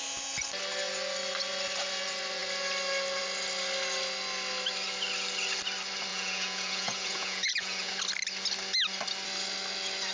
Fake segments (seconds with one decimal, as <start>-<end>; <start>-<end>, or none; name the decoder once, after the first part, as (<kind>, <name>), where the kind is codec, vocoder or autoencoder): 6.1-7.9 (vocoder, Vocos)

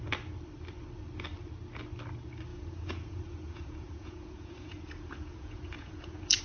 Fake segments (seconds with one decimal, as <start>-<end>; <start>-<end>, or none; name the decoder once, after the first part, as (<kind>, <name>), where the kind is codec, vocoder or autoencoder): 2.5-6.4 (vocoder, Vocos)

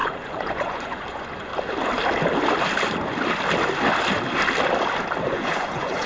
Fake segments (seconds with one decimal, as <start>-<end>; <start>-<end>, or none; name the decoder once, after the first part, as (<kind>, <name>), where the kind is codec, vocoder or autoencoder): 0.0-1.5 (vocoder, Vocos); 5.2-6.1

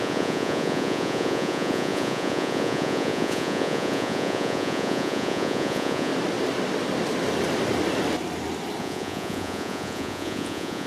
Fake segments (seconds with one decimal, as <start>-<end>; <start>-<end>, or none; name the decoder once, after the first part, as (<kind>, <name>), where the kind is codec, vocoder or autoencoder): 0.0-6.1 (vocoder, Vocos); 8.8-10.9

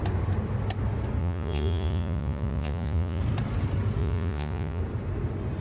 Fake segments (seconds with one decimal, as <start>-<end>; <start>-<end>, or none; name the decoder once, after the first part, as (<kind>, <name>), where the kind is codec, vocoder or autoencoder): 1.2-3.2 (vocoder, Vocos); 4.0-4.8

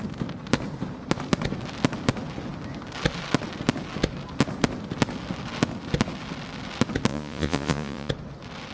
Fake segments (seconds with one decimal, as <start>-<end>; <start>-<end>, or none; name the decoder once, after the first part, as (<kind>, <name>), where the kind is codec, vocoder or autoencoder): 7.1-8.1 (vocoder, Vocos)

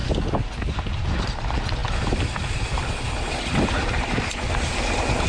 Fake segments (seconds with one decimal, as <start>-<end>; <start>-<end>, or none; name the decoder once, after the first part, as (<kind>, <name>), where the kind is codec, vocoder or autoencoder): none

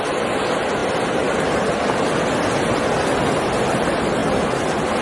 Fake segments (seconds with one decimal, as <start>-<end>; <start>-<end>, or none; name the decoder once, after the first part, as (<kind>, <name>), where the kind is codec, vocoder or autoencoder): none